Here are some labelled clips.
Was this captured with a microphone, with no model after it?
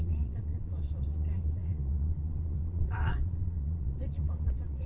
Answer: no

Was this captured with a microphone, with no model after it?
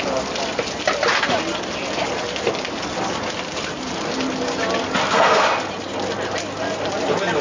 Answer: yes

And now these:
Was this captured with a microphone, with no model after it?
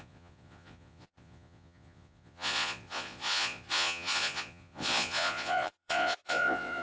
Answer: no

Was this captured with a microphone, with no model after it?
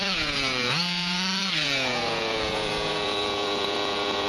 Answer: no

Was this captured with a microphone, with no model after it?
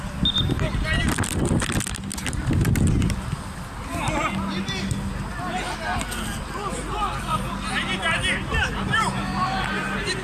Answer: yes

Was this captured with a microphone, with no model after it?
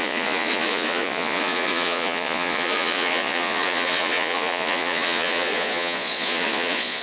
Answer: no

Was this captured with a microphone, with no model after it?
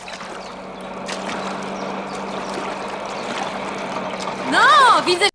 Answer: yes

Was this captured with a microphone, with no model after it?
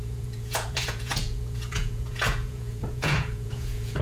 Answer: no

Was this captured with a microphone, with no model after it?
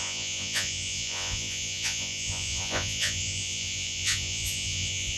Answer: no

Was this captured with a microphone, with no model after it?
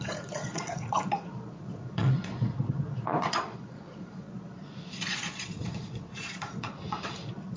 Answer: no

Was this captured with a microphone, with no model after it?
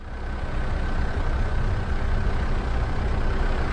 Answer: no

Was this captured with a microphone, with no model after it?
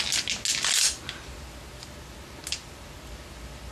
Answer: yes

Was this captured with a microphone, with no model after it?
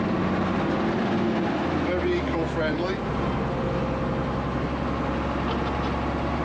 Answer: yes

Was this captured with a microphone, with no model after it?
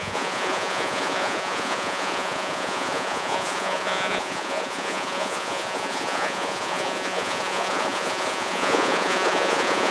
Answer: no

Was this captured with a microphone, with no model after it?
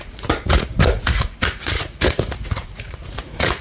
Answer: no